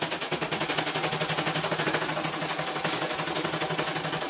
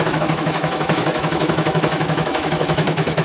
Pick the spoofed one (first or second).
second